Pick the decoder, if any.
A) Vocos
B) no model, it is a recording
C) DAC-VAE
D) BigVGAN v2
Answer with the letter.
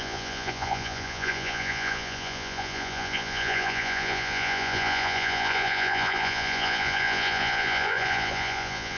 A